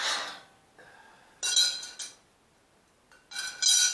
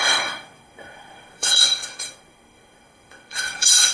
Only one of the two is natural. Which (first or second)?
first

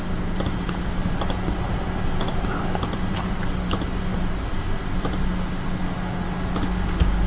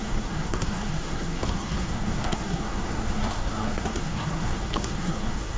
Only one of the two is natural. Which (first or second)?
first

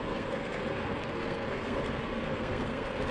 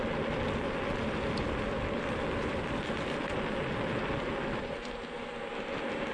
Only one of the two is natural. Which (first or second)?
second